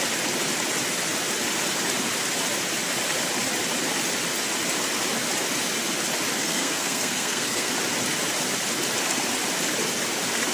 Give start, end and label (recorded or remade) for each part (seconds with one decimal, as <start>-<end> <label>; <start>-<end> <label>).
0.0-6.4 recorded; 6.4-7.7 remade; 7.7-10.5 recorded